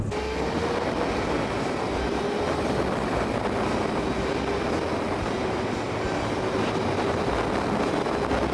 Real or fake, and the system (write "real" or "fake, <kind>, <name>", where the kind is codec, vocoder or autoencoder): real